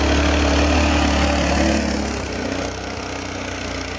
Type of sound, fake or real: real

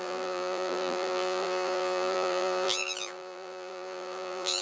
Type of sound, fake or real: fake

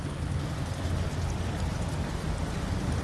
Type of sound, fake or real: real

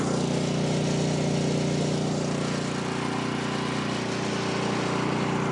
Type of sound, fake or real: real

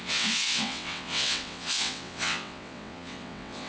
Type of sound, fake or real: fake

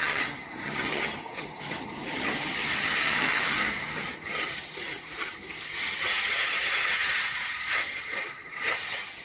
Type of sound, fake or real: fake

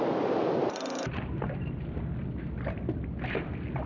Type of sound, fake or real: real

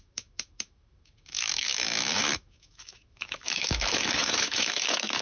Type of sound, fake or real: fake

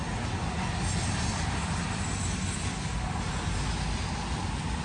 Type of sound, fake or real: real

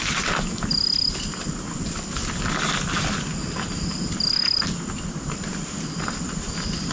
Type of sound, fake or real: fake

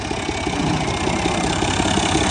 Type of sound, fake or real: real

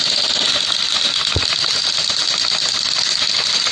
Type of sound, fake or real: real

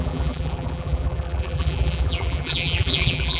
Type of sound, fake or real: fake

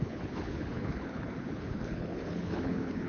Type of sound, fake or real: fake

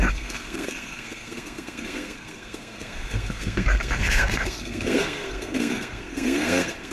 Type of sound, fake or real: fake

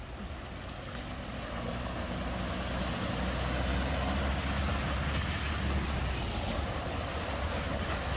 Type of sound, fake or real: real